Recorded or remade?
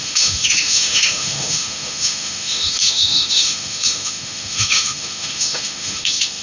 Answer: remade